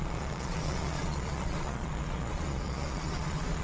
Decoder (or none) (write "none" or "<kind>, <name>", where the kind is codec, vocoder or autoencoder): vocoder, Vocos